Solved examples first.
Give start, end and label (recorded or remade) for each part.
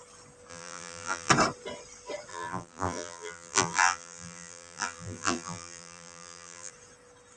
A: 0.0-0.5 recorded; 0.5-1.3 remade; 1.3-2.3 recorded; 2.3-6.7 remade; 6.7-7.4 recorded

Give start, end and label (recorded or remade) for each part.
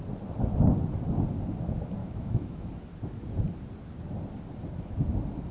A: 0.0-2.0 recorded; 2.0-2.7 remade; 2.7-5.5 recorded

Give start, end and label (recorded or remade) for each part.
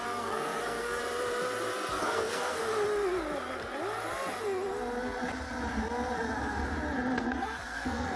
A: 0.0-1.0 remade; 1.0-1.9 recorded; 1.9-2.6 remade; 2.6-7.2 recorded; 7.2-8.2 remade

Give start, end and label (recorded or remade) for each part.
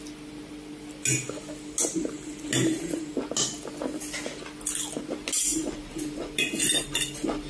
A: 0.0-7.5 recorded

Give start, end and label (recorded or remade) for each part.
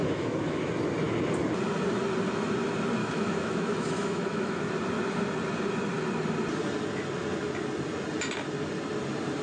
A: 0.0-0.7 remade; 0.7-3.0 recorded; 3.0-4.7 remade; 4.7-9.4 recorded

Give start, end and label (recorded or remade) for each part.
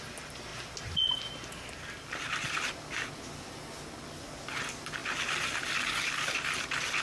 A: 0.0-7.0 recorded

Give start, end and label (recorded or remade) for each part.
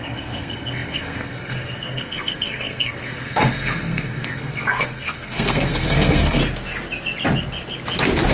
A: 0.0-6.4 remade; 6.4-8.3 recorded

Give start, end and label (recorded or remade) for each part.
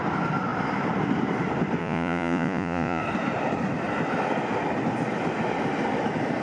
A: 0.0-1.8 recorded; 1.8-3.0 remade; 3.0-6.4 recorded